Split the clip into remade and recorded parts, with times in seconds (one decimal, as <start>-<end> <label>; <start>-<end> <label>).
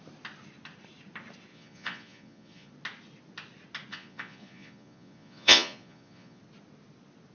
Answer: 0.0-1.5 recorded; 1.5-2.7 remade; 2.7-3.9 recorded; 3.9-6.4 remade; 6.4-7.3 recorded